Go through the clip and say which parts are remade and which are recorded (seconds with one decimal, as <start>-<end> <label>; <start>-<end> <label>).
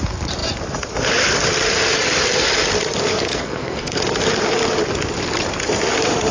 0.0-3.1 recorded; 3.1-4.0 remade; 4.0-6.3 recorded